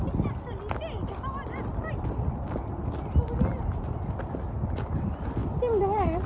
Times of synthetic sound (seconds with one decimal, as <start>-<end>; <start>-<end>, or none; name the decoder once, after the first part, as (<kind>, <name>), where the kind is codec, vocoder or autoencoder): 3.5-4.0 (vocoder, BigVGAN v2)